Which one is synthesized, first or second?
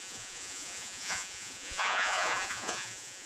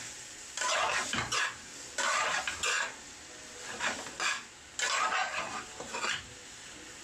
first